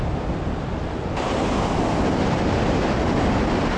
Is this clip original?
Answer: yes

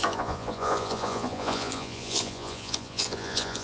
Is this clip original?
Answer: no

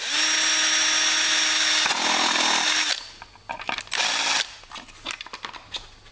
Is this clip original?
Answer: yes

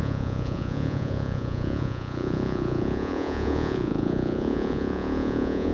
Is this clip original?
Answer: no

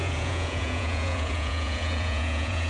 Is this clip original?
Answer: no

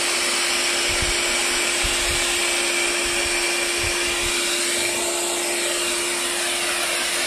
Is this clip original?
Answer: yes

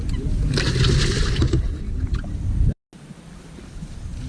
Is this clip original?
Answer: yes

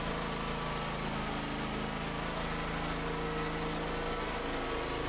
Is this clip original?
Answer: yes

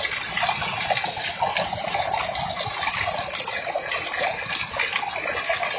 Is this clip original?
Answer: yes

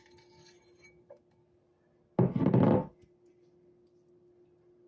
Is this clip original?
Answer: yes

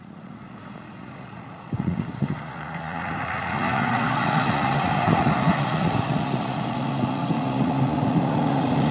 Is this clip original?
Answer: no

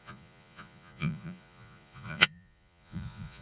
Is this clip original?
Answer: no